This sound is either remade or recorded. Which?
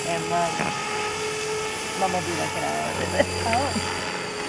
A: recorded